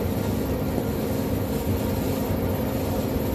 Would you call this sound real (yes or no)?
yes